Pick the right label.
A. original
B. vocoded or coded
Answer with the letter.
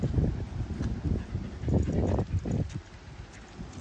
A